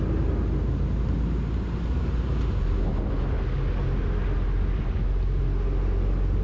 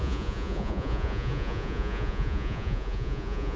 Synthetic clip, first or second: second